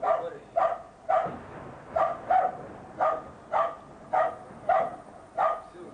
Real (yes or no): yes